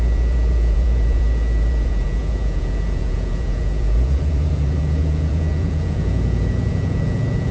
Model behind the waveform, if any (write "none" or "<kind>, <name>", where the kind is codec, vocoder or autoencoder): vocoder, Vocos